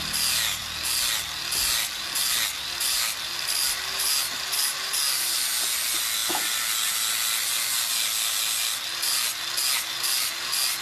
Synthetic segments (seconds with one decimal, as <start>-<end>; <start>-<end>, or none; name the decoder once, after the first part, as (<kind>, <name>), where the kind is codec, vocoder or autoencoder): none